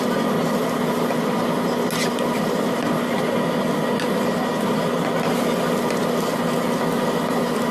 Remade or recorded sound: recorded